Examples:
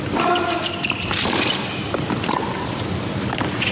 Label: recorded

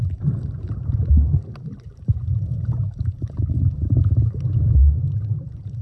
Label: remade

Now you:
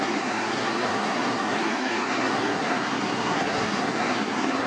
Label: remade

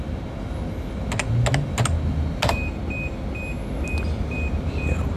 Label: recorded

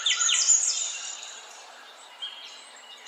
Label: remade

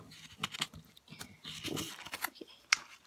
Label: recorded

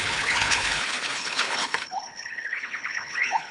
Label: remade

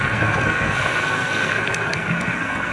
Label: remade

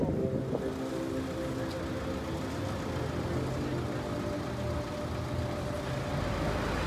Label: recorded